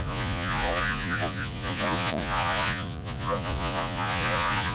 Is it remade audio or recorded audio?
remade